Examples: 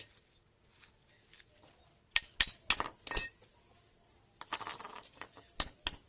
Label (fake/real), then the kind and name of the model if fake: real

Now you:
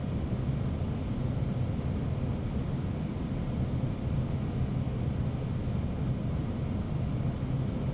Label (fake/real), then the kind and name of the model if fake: real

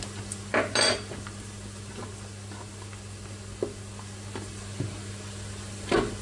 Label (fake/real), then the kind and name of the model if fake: real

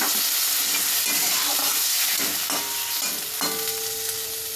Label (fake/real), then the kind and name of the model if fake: real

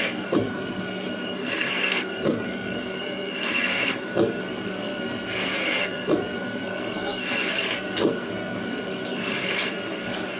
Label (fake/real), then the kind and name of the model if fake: fake, codec, SNAC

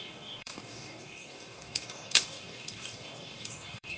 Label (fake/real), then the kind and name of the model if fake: fake, codec, DAC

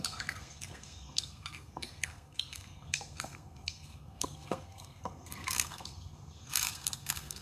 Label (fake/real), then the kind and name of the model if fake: fake, codec, SNAC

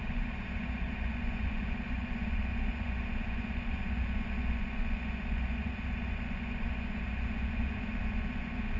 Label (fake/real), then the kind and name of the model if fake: fake, vocoder, Vocos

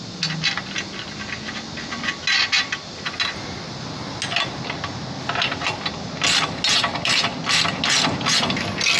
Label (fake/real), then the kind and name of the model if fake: real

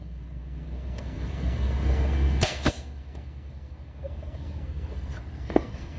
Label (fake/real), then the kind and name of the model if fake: fake, codec, SNAC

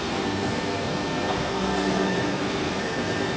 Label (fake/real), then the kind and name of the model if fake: fake, codec, SNAC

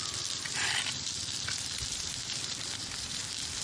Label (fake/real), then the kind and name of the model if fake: fake, vocoder, BigVGAN v2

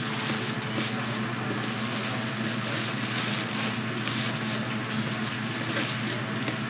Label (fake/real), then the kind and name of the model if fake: real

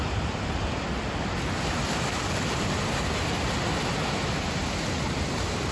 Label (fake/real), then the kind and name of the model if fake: real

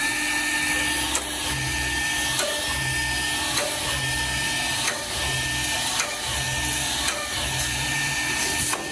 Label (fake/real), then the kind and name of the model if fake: real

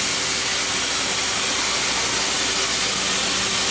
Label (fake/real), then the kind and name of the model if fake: real